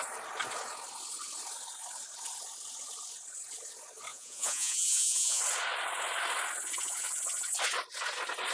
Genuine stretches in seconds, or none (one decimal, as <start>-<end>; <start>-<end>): 0.0-4.1; 5.4-8.5